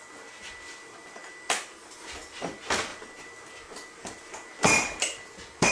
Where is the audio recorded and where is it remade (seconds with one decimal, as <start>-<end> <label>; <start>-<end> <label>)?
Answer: 0.0-5.7 recorded